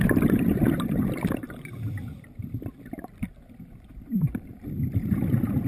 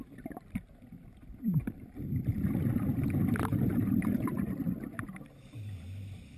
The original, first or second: second